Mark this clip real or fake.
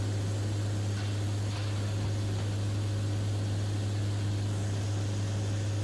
real